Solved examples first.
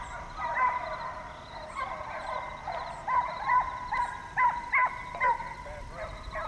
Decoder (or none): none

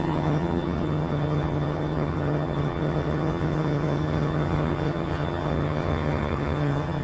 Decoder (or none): vocoder, HiFi-GAN